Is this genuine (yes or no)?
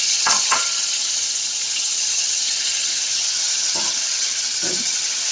no